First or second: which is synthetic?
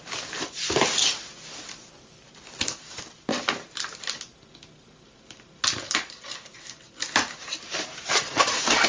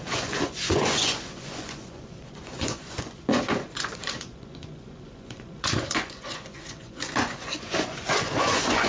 second